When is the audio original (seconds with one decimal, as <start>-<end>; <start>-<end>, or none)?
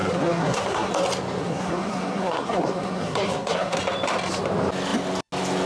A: 0.9-1.4; 3.8-5.7